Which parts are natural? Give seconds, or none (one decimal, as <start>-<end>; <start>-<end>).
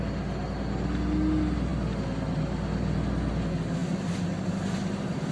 0.0-5.3